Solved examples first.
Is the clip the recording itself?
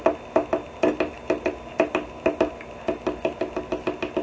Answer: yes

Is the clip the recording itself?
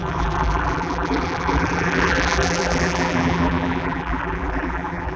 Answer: no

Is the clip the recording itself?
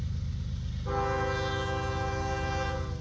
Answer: yes